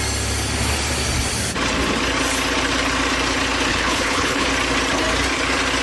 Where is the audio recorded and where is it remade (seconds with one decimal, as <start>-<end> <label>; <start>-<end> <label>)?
0.0-3.7 recorded; 3.7-4.5 remade; 4.5-5.8 recorded